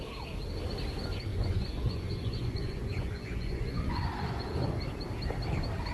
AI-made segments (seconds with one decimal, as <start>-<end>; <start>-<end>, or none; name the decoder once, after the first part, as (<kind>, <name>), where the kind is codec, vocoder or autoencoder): 1.3-4.8 (vocoder, Vocos)